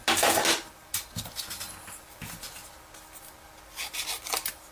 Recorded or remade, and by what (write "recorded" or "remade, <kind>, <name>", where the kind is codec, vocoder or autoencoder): recorded